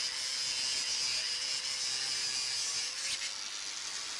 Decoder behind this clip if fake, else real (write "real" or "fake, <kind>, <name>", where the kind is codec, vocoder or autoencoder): real